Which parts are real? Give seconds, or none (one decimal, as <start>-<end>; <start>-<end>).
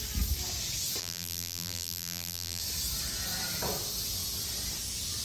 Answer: 0.0-1.0; 2.6-5.2